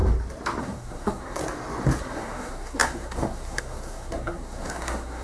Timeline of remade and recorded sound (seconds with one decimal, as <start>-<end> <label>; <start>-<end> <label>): 0.0-0.6 recorded; 0.6-1.4 remade; 1.4-2.0 recorded; 2.0-5.2 remade